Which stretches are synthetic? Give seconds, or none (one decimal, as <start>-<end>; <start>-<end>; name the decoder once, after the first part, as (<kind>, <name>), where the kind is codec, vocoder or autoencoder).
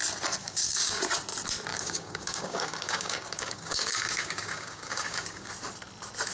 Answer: 0.4-1.0 (codec, DAC); 1.7-5.5